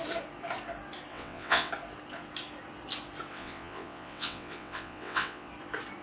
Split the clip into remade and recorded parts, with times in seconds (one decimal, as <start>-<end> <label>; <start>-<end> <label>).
0.0-1.1 recorded; 1.1-1.7 remade; 1.7-3.3 recorded; 3.3-5.5 remade; 5.5-6.0 recorded